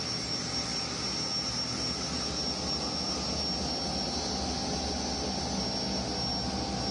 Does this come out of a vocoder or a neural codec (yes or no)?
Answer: no